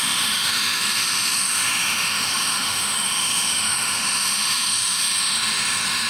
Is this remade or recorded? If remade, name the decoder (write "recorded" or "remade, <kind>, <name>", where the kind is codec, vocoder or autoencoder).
remade, autoencoder, DAC-VAE